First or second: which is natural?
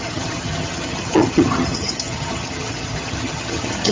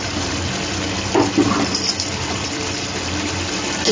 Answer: second